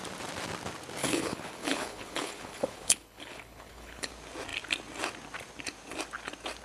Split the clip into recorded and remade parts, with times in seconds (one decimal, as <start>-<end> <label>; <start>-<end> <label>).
0.0-1.0 recorded; 1.0-4.1 remade; 4.1-6.6 recorded